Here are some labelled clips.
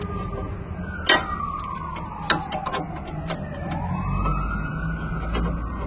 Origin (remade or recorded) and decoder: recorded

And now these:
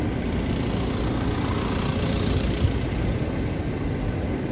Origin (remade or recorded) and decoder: recorded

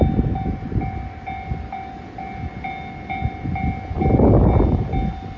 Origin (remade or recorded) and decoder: recorded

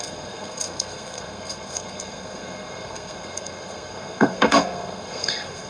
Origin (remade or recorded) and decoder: remade, codec, SNAC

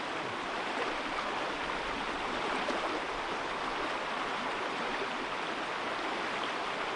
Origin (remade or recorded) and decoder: recorded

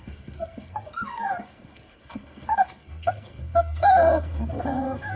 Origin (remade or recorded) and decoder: remade, codec, SNAC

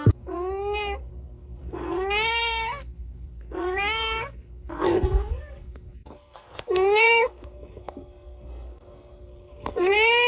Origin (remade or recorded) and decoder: remade, codec, SNAC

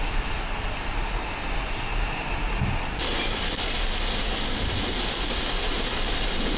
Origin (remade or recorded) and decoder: recorded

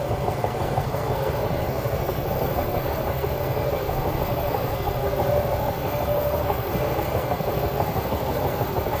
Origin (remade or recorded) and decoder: remade, codec, SNAC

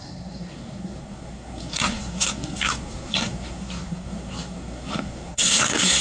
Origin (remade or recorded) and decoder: remade, codec, SNAC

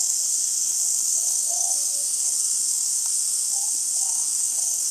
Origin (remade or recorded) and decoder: remade, codec, SNAC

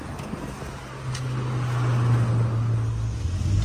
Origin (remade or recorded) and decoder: recorded